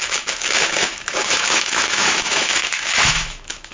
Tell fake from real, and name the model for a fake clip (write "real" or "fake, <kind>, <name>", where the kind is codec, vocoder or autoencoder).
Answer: fake, autoencoder, DAC-VAE